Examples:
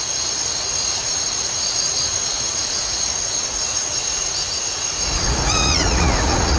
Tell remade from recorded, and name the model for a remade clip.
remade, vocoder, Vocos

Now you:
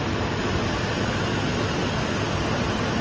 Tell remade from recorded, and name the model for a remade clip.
recorded